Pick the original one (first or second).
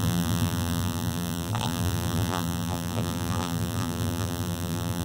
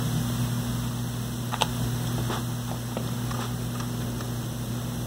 second